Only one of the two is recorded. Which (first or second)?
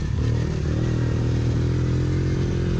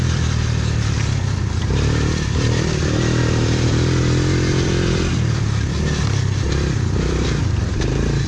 first